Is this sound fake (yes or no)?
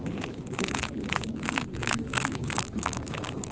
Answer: yes